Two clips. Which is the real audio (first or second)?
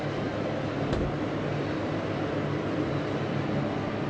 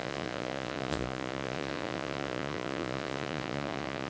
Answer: first